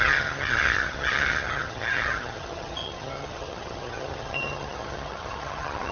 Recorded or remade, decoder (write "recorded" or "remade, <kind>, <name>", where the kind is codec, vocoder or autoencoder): remade, vocoder, HiFi-GAN